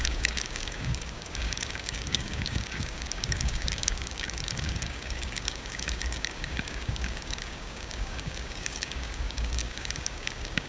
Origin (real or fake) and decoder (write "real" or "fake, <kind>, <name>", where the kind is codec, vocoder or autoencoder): fake, codec, DAC